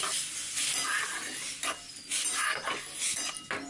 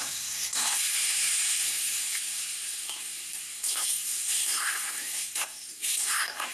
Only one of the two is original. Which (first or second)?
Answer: first